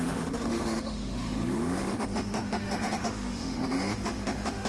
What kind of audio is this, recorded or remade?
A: remade